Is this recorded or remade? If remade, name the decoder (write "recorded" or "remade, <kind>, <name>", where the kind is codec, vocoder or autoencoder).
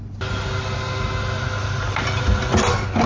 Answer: recorded